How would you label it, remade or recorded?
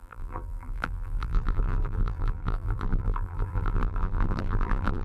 remade